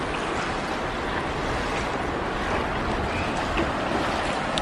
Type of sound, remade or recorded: recorded